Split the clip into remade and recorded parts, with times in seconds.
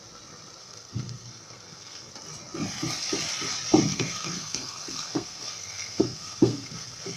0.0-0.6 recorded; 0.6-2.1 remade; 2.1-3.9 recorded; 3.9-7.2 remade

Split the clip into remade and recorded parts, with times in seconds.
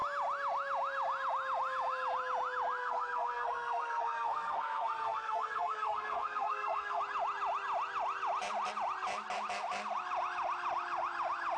0.0-2.8 recorded; 2.8-7.0 remade; 7.0-11.6 recorded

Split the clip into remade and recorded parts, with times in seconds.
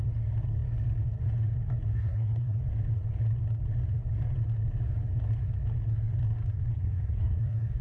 0.0-1.9 recorded; 1.9-2.6 remade; 2.6-6.7 recorded; 6.7-7.8 remade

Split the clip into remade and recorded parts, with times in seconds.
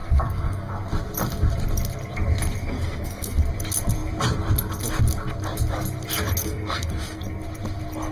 0.0-0.7 remade; 0.7-2.6 recorded; 2.6-3.4 remade; 3.4-6.4 recorded; 6.4-7.2 remade; 7.2-8.1 recorded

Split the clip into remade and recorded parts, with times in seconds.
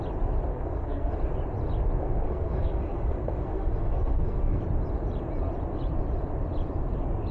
0.0-0.5 recorded; 0.5-1.1 remade; 1.1-2.0 recorded; 2.0-4.6 remade; 4.6-7.3 recorded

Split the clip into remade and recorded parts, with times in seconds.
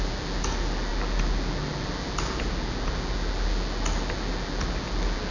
0.0-5.3 recorded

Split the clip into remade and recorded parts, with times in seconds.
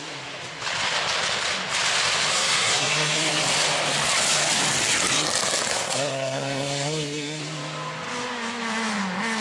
0.0-2.3 recorded; 2.3-3.4 remade; 3.4-5.7 recorded; 5.7-7.4 remade; 7.4-9.4 recorded